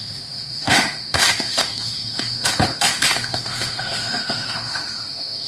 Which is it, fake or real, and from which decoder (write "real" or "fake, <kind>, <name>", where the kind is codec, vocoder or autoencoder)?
fake, autoencoder, DAC-VAE